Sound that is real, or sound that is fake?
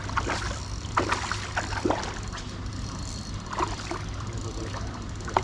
real